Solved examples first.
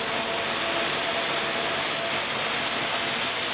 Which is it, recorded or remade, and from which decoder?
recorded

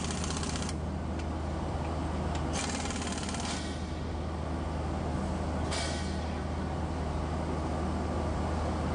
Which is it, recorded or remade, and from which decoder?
recorded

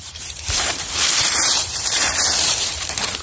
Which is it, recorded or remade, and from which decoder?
remade, vocoder, BigVGAN v2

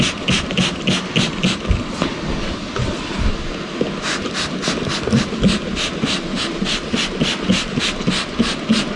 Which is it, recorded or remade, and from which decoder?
remade, vocoder, BigVGAN v2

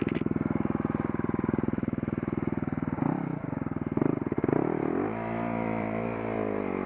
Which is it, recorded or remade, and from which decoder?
remade, vocoder, BigVGAN v2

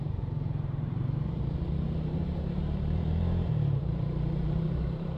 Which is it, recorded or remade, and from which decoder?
remade, vocoder, BigVGAN v2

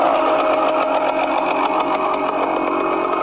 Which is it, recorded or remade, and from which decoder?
recorded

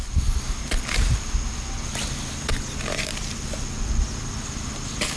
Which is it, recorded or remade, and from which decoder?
recorded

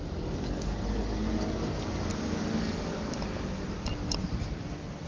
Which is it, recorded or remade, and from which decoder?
recorded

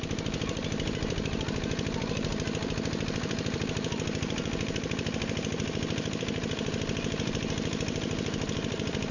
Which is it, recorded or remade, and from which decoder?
remade, vocoder, BigVGAN v2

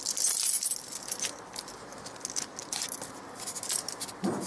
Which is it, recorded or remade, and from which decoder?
recorded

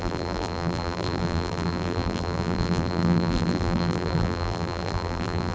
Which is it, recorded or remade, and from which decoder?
remade, vocoder, BigVGAN v2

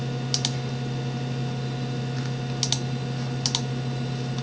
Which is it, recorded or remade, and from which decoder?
recorded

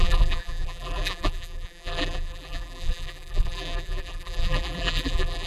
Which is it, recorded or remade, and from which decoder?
remade, vocoder, BigVGAN v2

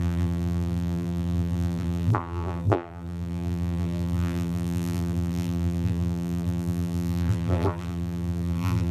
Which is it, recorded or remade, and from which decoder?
remade, vocoder, BigVGAN v2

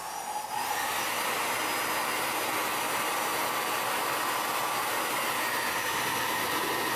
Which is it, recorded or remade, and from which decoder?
recorded